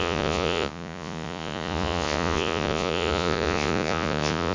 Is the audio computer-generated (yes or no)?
yes